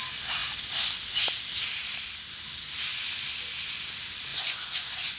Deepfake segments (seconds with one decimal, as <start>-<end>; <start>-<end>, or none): 4.3-5.2